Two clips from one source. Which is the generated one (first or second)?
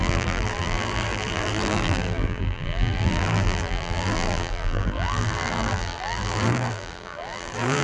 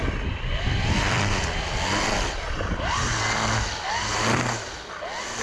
first